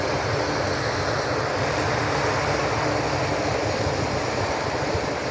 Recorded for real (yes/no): yes